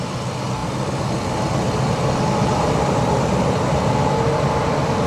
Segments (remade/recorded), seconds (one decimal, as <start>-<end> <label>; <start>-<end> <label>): 0.0-5.1 recorded